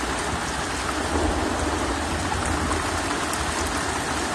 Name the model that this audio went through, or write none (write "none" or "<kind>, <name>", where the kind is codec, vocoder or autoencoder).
none